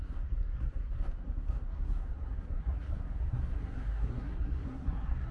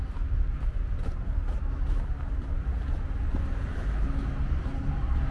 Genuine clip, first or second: second